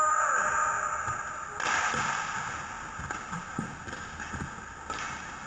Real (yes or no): yes